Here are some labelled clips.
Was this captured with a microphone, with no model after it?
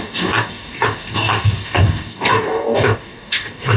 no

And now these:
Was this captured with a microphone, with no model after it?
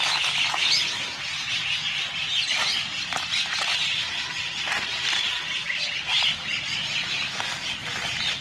yes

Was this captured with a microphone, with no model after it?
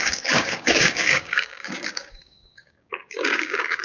no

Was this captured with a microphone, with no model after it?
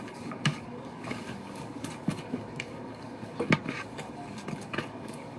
no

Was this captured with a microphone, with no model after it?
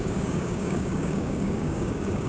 no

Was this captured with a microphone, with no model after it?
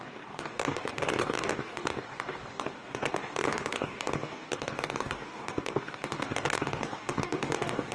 no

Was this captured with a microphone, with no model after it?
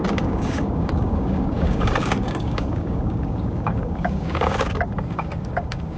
no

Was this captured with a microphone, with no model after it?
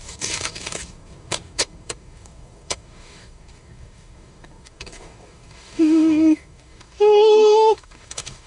no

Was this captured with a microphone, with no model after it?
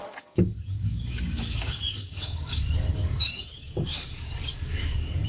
no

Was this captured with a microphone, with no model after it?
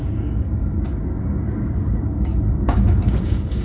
no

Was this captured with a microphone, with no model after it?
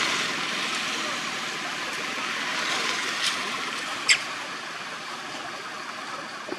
yes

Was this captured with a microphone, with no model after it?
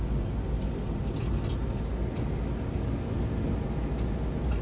yes